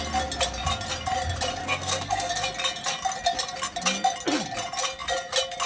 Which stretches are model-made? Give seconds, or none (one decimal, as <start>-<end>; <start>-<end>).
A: 1.6-2.3